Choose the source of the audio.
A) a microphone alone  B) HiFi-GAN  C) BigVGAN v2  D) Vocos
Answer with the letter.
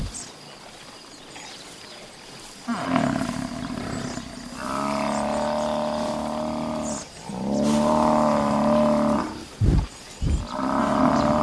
A